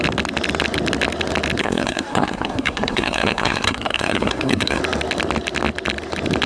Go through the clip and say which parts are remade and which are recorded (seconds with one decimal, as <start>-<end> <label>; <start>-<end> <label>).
0.0-1.6 recorded; 1.6-4.8 remade; 4.8-6.5 recorded